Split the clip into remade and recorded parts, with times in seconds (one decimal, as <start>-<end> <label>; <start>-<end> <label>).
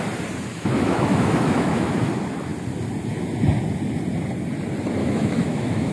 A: 0.0-0.5 recorded; 0.5-2.1 remade; 2.1-5.0 recorded; 5.0-5.9 remade